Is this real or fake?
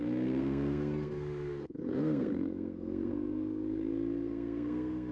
fake